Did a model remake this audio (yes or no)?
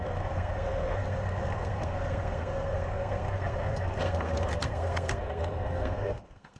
yes